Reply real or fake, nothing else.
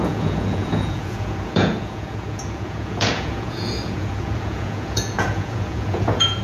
fake